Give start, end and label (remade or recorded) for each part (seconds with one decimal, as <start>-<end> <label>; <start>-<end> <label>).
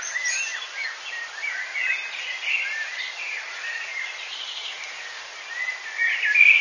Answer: 0.0-0.5 recorded; 0.5-3.1 remade; 3.1-3.9 recorded; 3.9-4.7 remade; 4.7-6.6 recorded